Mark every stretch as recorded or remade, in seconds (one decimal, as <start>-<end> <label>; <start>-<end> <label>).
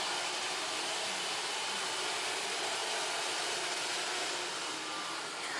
0.0-2.8 remade; 2.8-4.7 recorded; 4.7-5.6 remade